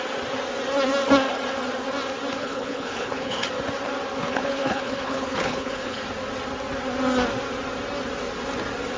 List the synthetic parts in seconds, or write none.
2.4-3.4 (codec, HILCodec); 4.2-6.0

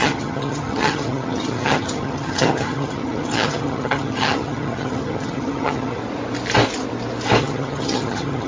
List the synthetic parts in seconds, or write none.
0.0-6.0 (vocoder, HiFi-GAN); 7.4-8.5

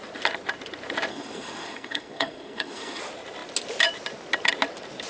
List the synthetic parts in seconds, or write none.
1.1-3.0 (codec, SNAC)